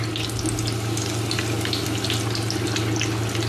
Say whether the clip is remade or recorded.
recorded